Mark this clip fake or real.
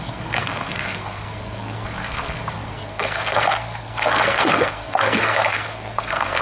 fake